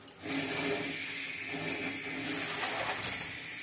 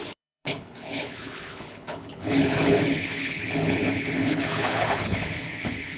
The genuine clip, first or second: first